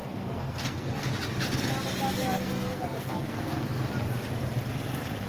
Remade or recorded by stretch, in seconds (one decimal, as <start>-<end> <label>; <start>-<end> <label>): 0.0-1.1 remade; 1.1-2.2 recorded; 2.2-3.8 remade; 3.8-5.3 recorded